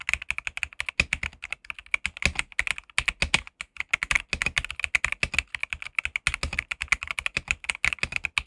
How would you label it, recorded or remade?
recorded